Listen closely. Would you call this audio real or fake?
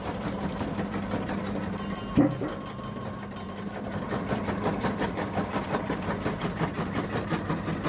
fake